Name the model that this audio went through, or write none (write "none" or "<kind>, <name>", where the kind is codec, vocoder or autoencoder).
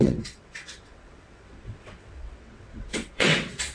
vocoder, WaveNeXt